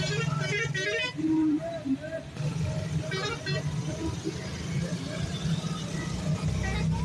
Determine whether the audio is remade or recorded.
recorded